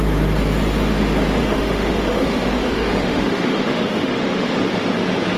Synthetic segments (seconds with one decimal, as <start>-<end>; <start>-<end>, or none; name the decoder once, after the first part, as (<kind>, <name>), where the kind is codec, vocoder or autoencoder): 1.4-4.6 (autoencoder, DAC-VAE)

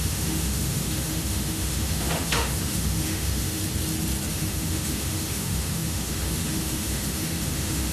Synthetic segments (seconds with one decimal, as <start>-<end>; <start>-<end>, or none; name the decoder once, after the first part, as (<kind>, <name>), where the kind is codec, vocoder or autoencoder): 0.0-3.6 (autoencoder, DAC-VAE); 4.3-7.9

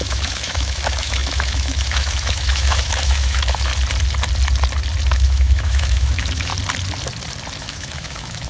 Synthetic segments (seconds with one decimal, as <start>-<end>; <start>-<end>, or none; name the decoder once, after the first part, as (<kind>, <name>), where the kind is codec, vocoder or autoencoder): 0.0-3.7 (autoencoder, DAC-VAE); 5.1-6.5; 7.6-8.5

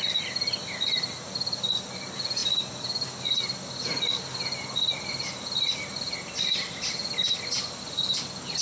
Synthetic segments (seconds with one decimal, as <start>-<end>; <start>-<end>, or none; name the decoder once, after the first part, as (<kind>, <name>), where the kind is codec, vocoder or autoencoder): none

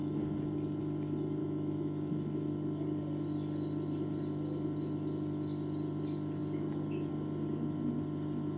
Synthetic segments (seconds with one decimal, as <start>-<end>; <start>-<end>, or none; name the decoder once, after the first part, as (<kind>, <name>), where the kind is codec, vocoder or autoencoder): 1.4-2.1 (autoencoder, DAC-VAE)

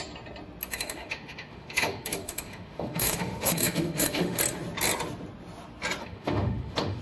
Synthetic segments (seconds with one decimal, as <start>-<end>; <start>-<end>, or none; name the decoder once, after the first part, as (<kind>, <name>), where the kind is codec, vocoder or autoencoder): 0.7-4.4 (autoencoder, DAC-VAE); 6.0-7.0

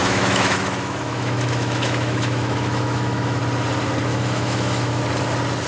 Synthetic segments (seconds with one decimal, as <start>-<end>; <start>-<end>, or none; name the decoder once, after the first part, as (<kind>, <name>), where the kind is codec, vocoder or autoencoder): 0.0-3.4 (autoencoder, DAC-VAE); 4.1-5.0